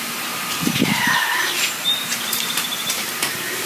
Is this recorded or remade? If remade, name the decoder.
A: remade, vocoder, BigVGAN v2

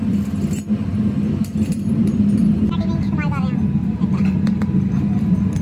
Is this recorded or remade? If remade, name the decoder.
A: recorded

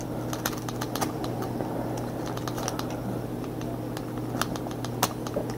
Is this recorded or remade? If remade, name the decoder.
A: recorded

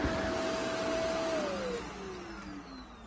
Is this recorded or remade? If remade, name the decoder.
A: recorded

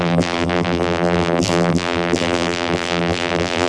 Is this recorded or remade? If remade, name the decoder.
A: remade, vocoder, BigVGAN v2